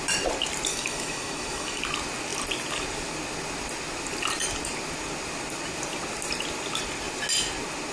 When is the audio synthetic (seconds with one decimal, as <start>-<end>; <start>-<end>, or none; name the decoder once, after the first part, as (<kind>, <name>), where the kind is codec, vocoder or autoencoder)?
0.7-1.8 (autoencoder, DAC-VAE)